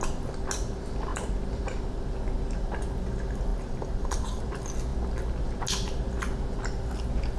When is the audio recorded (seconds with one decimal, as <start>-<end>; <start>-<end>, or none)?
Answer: 0.0-3.5; 4.4-7.4